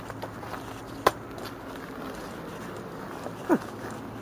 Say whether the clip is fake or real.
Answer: real